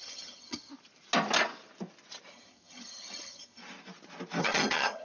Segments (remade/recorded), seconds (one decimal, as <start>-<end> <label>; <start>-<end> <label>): 0.0-0.7 remade; 0.7-2.3 recorded; 2.3-3.6 remade; 3.6-4.4 recorded; 4.4-5.0 remade